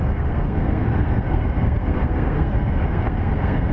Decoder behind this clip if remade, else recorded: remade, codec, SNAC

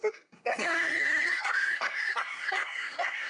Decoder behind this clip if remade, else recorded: remade, codec, SNAC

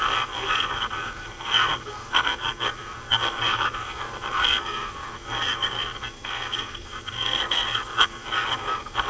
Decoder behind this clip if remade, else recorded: remade, codec, SNAC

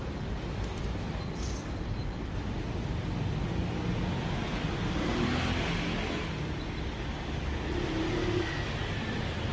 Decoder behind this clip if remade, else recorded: recorded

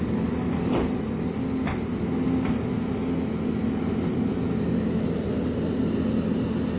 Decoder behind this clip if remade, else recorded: recorded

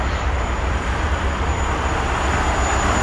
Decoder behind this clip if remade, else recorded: recorded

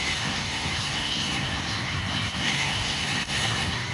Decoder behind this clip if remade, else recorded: remade, codec, SNAC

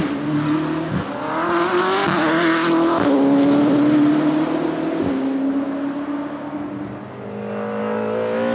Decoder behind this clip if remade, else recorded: recorded